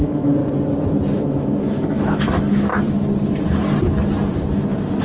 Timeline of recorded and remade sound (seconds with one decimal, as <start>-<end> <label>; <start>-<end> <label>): 0.0-0.4 remade; 0.4-1.1 recorded; 1.1-2.7 remade; 2.7-5.0 recorded